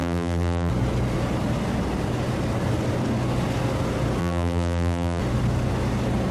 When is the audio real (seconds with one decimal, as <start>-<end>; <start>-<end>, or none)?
0.7-4.2; 5.2-6.3